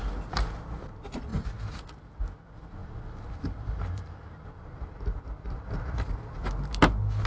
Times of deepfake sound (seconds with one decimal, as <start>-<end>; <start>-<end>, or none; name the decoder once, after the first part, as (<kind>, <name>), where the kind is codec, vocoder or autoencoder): 2.8-6.1 (vocoder, BigVGAN v2)